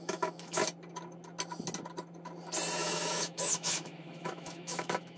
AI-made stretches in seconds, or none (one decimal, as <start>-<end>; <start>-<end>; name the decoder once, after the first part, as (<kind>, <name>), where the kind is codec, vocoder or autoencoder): 0.0-0.6 (autoencoder, DAC-VAE); 2.8-5.2